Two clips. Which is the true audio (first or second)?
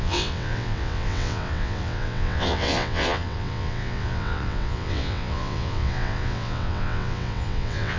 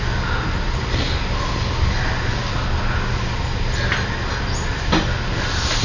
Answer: second